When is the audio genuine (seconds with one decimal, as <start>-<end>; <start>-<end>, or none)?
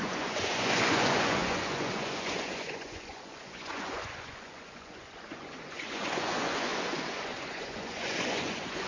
none